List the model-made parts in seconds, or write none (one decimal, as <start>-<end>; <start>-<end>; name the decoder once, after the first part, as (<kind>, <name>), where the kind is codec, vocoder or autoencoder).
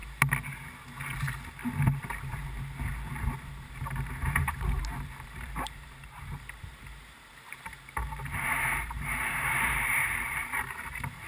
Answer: 2.0-2.4 (vocoder, BigVGAN v2); 3.1-11.3